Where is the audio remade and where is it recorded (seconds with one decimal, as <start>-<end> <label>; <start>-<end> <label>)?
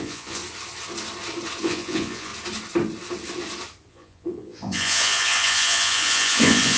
0.0-0.4 remade; 0.4-1.6 recorded; 1.6-2.3 remade; 2.3-3.9 recorded; 3.9-6.8 remade